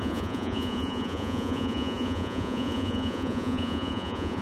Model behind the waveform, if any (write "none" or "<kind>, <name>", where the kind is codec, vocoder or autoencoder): vocoder, Vocos